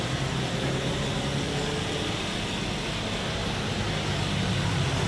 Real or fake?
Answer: real